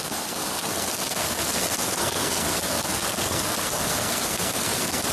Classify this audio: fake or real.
fake